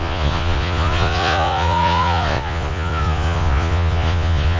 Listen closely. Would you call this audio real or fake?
fake